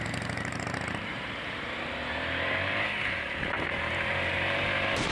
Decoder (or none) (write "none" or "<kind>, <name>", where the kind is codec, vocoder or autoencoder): vocoder, BigVGAN v2